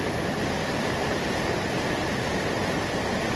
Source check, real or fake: real